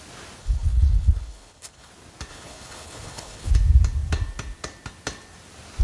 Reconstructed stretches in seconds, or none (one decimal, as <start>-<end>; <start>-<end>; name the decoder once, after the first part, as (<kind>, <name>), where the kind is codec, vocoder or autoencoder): 0.4-1.9 (codec, HILCodec); 2.3-3.5